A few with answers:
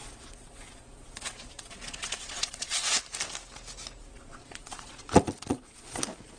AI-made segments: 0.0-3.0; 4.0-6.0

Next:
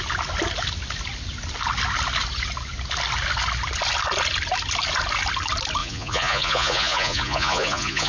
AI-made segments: 5.8-8.1

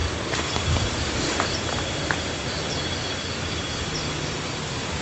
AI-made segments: none